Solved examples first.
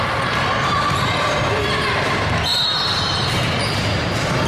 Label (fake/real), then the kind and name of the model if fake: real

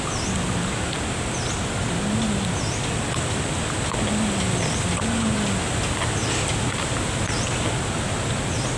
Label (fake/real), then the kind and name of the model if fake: real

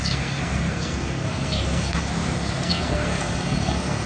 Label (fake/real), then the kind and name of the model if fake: fake, codec, SNAC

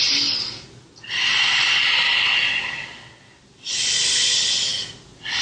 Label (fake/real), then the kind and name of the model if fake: real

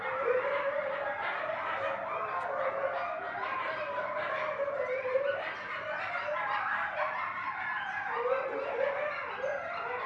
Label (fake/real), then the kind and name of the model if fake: real